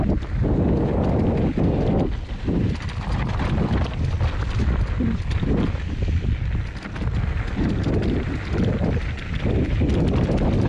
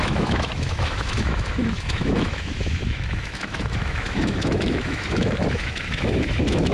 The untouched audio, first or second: first